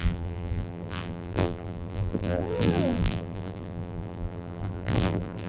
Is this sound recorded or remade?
remade